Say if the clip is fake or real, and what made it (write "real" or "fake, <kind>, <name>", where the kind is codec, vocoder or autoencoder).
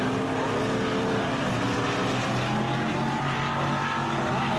real